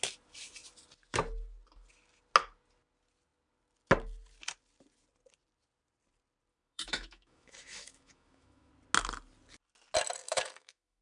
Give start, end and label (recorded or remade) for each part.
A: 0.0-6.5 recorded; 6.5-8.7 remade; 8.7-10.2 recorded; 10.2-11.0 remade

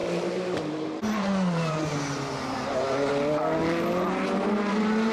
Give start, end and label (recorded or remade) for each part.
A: 0.0-3.1 remade; 3.1-5.1 recorded

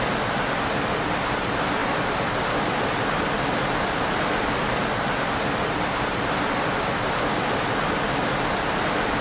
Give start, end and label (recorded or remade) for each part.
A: 0.0-9.2 recorded

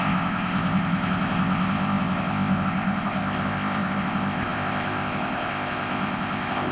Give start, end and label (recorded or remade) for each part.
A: 0.0-6.7 remade

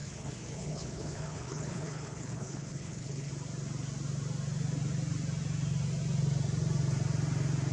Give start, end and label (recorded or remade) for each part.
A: 0.0-3.3 remade; 3.3-7.7 recorded

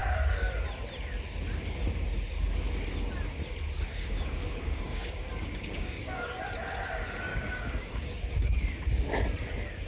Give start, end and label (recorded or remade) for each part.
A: 0.0-3.9 recorded; 3.9-6.4 remade; 6.4-7.3 recorded; 7.3-8.2 remade; 8.2-9.9 recorded

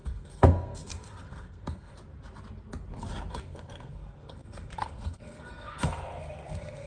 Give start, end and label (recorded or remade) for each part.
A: 0.0-2.0 remade; 2.0-3.3 recorded; 3.3-6.9 remade

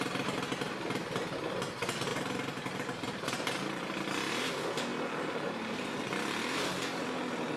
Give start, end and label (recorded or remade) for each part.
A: 0.0-2.1 recorded; 2.1-3.8 remade; 3.8-4.9 recorded; 4.9-6.0 remade; 6.0-7.6 recorded